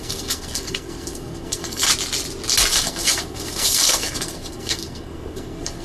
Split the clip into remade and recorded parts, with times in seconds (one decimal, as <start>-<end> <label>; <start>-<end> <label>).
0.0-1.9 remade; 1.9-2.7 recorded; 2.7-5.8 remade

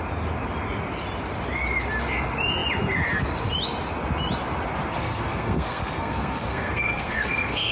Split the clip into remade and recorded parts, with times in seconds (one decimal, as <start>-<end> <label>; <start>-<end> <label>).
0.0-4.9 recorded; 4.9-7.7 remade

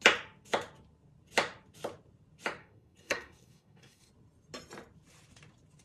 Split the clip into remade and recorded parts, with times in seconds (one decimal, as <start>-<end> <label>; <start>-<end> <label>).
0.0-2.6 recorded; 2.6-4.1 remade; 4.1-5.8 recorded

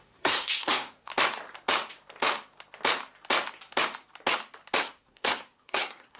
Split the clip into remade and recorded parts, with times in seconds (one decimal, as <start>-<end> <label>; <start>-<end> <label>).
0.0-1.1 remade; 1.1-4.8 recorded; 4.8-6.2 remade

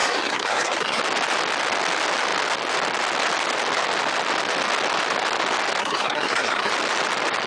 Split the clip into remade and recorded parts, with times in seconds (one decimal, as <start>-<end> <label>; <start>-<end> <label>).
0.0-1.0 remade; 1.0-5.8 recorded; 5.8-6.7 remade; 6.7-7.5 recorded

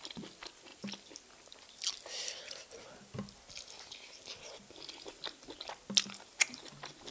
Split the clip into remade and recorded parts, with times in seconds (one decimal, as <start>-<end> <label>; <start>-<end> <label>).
0.0-7.1 recorded

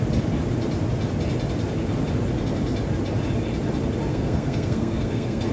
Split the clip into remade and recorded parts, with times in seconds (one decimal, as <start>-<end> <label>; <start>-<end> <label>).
0.0-4.1 recorded; 4.1-5.5 remade